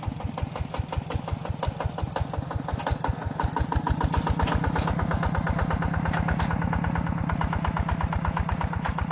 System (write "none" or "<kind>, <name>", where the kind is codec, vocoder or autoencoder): none